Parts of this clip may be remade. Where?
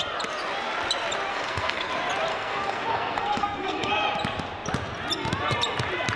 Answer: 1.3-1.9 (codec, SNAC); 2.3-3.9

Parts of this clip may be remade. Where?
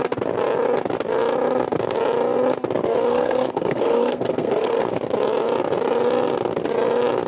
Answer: 3.1-4.9 (codec, SNAC)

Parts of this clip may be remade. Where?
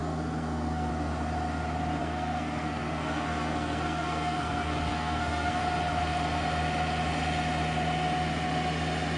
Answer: 0.0-0.9 (codec, SNAC); 2.0-5.6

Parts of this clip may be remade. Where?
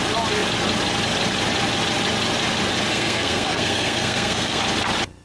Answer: 2.9-4.6 (codec, SNAC)